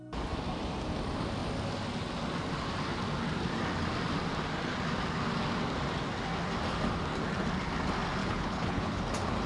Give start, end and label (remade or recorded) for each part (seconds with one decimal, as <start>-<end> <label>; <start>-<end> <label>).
0.0-8.2 recorded; 8.2-9.0 remade; 9.0-9.5 recorded